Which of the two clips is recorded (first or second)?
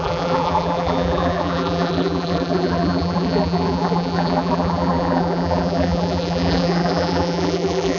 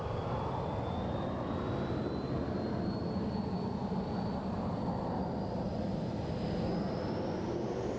second